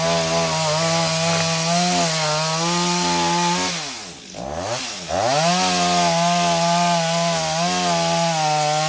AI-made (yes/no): no